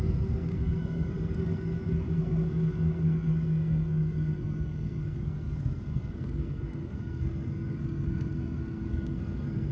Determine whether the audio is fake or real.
fake